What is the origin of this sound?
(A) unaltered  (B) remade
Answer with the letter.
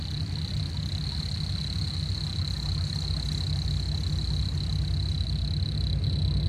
A